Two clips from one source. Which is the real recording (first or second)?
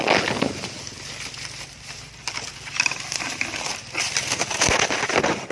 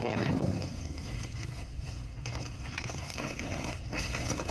first